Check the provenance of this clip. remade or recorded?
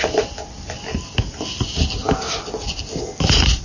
recorded